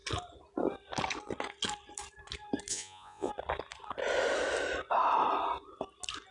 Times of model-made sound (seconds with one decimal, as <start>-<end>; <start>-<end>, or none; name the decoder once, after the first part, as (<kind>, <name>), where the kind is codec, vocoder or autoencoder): 2.7-3.3 (vocoder, Vocos)